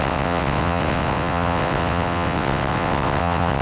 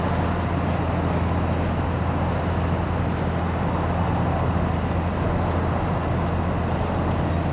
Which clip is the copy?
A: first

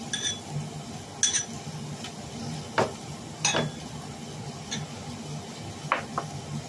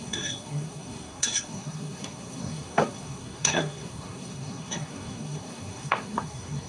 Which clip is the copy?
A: second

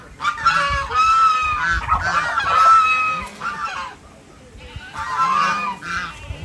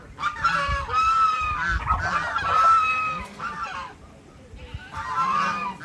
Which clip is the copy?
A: second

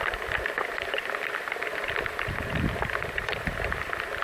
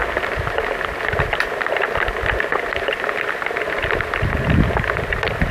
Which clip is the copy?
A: first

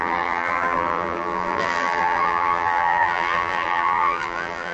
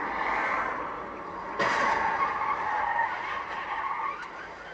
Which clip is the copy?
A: first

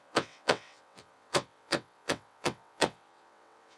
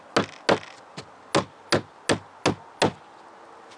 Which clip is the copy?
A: first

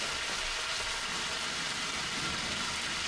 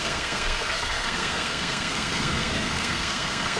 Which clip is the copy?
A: second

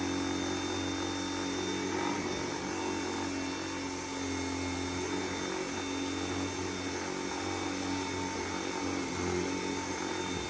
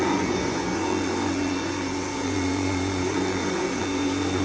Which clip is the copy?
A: second